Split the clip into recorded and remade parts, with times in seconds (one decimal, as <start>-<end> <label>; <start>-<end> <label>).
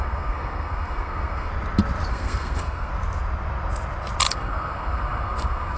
0.0-1.5 remade; 1.5-2.1 recorded; 2.1-2.9 remade; 2.9-4.3 recorded; 4.3-5.8 remade